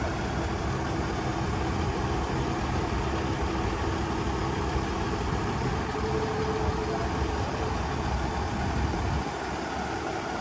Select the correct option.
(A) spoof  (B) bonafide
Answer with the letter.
B